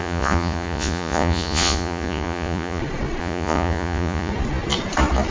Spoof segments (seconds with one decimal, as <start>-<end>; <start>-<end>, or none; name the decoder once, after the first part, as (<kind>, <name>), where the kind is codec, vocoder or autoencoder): 0.0-2.8 (vocoder, Vocos); 3.2-4.3